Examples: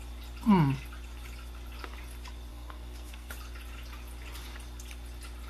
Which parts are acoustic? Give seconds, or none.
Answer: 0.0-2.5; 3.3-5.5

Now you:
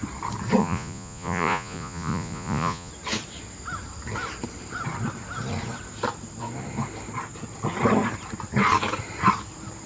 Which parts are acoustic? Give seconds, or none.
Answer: 0.0-0.6; 2.9-9.9

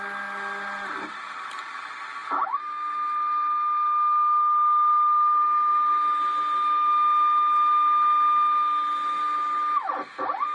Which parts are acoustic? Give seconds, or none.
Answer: 0.0-10.5

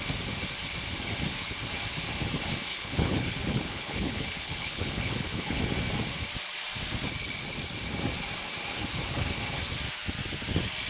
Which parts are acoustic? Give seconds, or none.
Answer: 0.0-2.7; 5.6-10.9

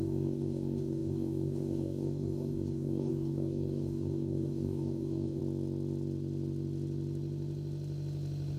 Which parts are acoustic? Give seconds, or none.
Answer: 5.4-8.6